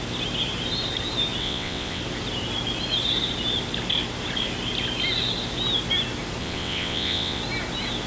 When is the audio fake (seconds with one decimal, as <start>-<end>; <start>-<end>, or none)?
1.4-2.0; 6.4-7.4